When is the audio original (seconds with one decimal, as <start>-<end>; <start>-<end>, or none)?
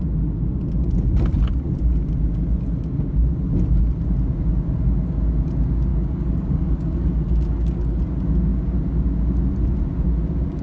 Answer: 0.0-5.9; 8.0-10.6